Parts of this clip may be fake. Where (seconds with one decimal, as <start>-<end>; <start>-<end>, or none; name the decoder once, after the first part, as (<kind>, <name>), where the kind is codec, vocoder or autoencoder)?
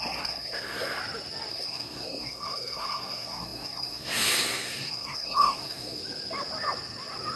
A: 0.0-1.0 (codec, SNAC); 1.5-6.0